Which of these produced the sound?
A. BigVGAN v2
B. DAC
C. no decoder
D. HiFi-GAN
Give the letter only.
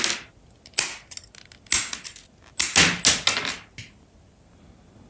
C